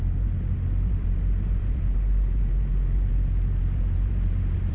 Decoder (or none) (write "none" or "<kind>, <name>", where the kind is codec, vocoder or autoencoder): vocoder, BigVGAN v2